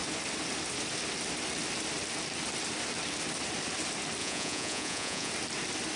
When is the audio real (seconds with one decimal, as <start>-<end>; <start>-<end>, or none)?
0.0-4.2; 5.3-6.0